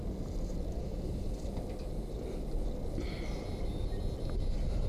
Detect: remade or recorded recorded